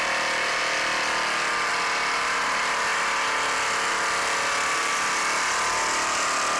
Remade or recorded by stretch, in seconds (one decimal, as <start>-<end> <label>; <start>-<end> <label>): 0.0-6.6 recorded